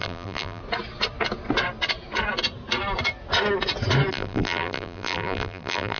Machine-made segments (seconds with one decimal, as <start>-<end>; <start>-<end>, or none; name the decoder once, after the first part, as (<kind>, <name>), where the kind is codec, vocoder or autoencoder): 0.0-0.6 (vocoder, BigVGAN v2); 4.1-6.0